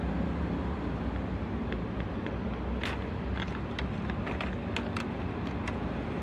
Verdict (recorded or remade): recorded